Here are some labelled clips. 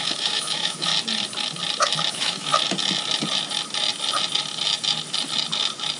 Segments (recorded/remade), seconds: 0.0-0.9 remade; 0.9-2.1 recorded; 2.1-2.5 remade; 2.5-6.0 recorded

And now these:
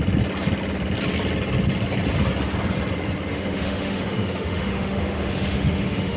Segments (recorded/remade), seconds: 0.0-3.3 recorded; 3.3-6.2 remade